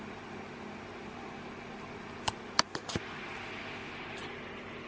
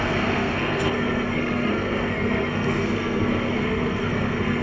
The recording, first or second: first